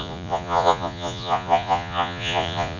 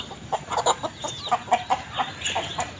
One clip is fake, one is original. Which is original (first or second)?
second